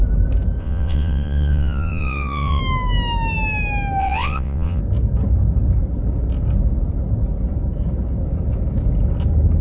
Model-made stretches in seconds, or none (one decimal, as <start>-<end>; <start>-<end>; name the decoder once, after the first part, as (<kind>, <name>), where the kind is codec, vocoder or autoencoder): 0.6-2.6 (vocoder, WaveNeXt); 4.0-4.8